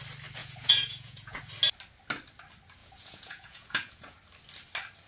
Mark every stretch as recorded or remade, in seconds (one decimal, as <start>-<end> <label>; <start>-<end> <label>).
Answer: 0.0-0.4 recorded; 0.4-1.4 remade; 1.4-2.8 recorded; 2.8-4.2 remade; 4.2-5.1 recorded